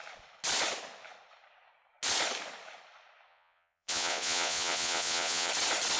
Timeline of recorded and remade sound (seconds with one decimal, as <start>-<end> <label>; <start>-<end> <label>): 0.0-3.3 recorded; 3.3-5.5 remade; 5.5-6.0 recorded